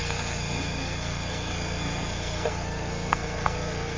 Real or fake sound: fake